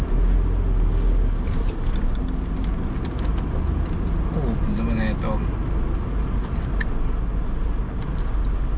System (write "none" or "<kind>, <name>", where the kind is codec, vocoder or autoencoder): none